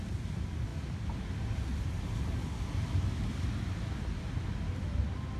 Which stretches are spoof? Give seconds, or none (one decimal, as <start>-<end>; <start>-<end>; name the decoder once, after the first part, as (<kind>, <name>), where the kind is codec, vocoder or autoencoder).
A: none